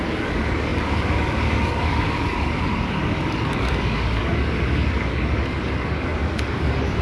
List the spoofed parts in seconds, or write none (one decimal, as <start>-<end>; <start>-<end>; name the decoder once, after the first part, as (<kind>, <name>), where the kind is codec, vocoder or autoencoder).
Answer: 0.0-7.0 (codec, DAC)